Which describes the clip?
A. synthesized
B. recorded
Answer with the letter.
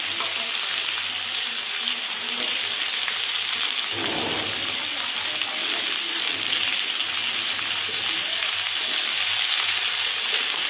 B